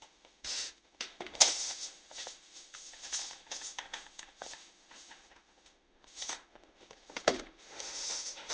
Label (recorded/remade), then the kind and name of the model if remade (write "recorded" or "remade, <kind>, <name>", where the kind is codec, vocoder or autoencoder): remade, autoencoder, DAC-VAE